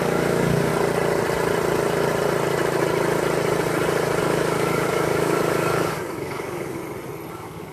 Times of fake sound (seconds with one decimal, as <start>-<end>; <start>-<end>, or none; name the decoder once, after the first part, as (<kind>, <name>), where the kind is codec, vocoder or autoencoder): 0.0-0.7 (codec, DAC); 4.2-6.8; 7.3-7.7